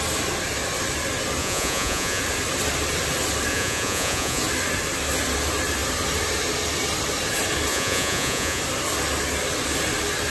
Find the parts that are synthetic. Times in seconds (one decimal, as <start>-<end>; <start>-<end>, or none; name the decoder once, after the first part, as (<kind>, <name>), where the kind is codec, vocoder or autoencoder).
1.4-2.2 (vocoder, Vocos); 3.5-4.4; 7.7-8.6